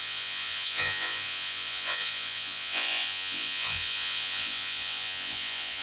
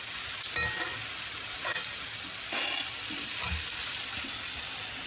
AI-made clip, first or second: first